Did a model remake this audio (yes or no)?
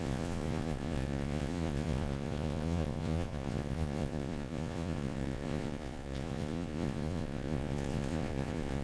yes